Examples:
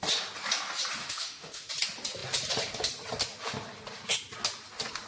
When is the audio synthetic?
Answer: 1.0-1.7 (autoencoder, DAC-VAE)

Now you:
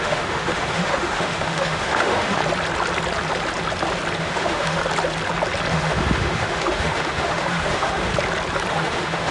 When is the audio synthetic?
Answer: 0.0-2.4 (autoencoder, DAC-VAE); 4.2-4.8; 5.7-8.1; 8.7-9.3

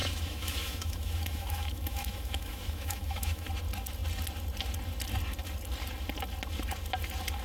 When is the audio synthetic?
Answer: 0.0-3.5 (autoencoder, DAC-VAE)

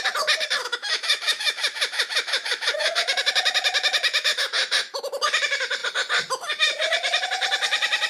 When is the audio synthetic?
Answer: 0.6-5.1 (autoencoder, DAC-VAE)

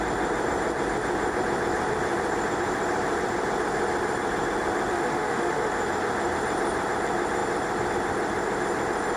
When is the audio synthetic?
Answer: 4.9-5.7 (autoencoder, DAC-VAE)

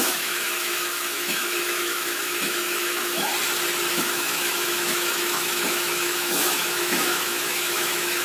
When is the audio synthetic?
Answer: 0.0-3.3 (autoencoder, DAC-VAE); 3.9-8.2

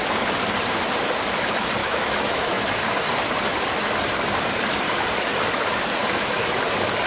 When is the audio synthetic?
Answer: 1.8-2.8 (autoencoder, DAC-VAE); 6.0-6.6

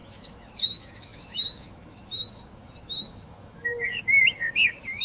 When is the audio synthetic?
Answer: 0.0-5.0 (autoencoder, DAC-VAE)